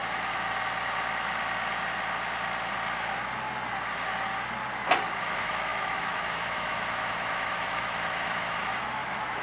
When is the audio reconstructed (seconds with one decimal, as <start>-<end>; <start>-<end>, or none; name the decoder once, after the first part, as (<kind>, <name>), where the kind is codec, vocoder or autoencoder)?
5.2-9.4 (autoencoder, DAC-VAE)